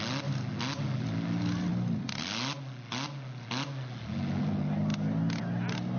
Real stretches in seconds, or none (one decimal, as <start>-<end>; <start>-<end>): 0.0-6.0